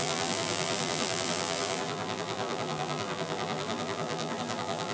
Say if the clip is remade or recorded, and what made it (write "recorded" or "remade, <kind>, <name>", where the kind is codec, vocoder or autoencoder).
remade, vocoder, BigVGAN v2